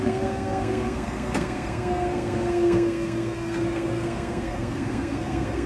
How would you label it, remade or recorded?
remade